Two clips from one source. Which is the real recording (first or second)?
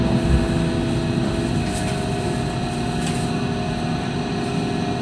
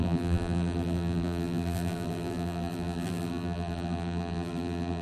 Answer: first